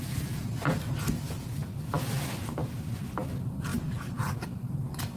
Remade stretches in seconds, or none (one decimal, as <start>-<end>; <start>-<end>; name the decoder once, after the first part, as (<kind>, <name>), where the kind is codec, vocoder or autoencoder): none